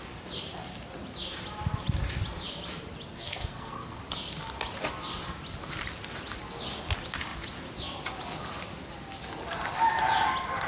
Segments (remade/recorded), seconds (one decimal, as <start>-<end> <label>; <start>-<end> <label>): 0.0-3.1 recorded; 3.1-4.0 remade; 4.0-10.7 recorded